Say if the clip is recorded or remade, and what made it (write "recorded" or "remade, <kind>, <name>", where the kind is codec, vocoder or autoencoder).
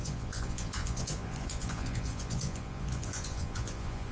remade, vocoder, Vocos